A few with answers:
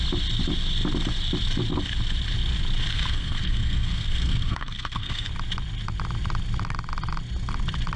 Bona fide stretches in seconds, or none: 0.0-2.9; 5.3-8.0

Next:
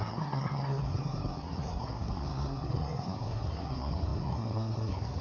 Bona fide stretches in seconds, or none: none

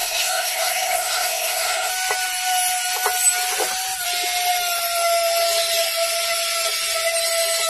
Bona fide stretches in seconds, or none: 1.9-7.7